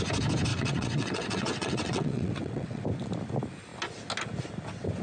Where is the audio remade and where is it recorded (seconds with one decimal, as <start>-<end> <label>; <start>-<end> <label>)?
0.0-0.5 recorded; 0.5-2.8 remade; 2.8-5.0 recorded